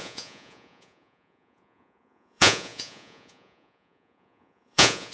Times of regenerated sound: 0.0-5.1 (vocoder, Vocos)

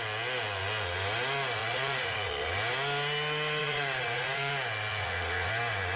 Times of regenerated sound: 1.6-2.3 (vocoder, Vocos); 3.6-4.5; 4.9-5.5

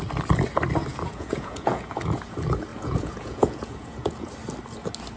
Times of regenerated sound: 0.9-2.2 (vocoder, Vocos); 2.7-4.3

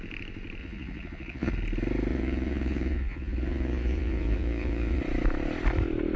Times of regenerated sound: 0.6-1.5 (vocoder, Vocos); 2.1-5.0